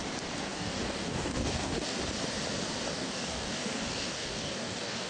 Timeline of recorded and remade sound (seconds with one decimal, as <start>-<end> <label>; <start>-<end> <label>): 0.0-0.5 recorded; 0.5-2.0 remade; 2.0-2.9 recorded; 2.9-5.1 remade